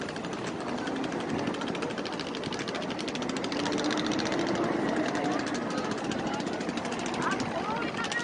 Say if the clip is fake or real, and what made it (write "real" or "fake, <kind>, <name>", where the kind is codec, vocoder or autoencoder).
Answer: real